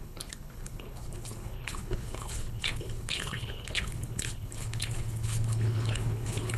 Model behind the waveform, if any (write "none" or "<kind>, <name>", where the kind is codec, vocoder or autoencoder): codec, HILCodec